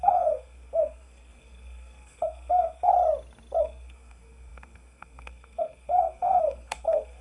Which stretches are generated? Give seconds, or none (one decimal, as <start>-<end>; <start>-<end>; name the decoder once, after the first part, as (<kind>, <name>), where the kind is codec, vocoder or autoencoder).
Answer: 0.0-2.9 (codec, SNAC); 3.6-7.2